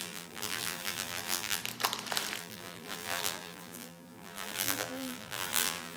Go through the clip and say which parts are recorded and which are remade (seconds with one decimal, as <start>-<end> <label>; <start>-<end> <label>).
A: 0.0-1.6 remade; 1.6-2.4 recorded; 2.4-6.0 remade